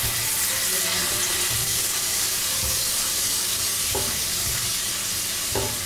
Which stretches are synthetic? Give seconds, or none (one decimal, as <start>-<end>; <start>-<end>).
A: 1.6-4.9